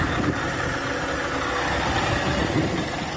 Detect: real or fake real